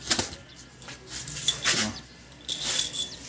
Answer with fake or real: fake